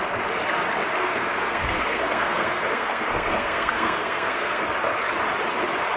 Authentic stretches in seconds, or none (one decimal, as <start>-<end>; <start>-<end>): 0.0-1.0; 4.6-6.0